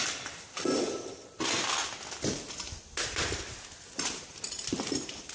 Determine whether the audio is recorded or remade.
recorded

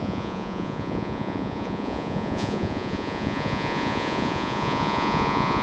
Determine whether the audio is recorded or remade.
remade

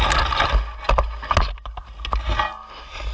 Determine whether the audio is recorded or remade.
recorded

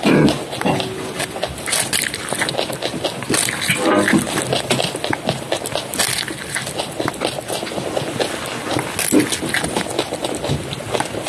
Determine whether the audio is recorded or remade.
recorded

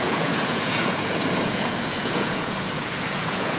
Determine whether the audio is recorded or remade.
remade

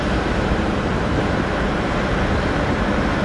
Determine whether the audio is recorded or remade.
remade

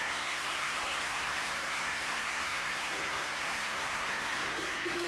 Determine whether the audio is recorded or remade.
remade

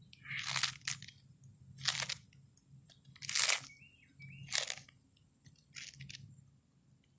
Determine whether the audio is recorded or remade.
recorded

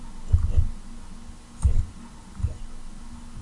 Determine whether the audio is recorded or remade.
recorded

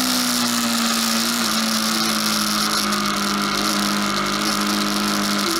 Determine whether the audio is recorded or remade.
recorded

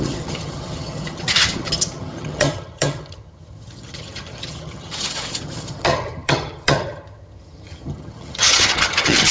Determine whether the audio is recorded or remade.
remade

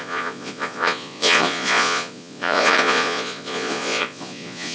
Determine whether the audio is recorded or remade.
remade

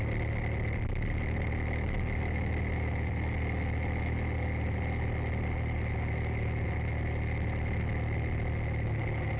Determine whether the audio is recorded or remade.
recorded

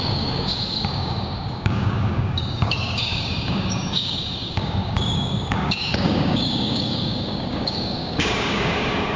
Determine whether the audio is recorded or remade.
remade